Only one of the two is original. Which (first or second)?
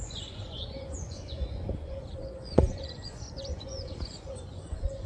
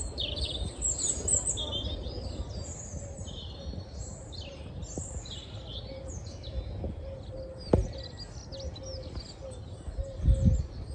second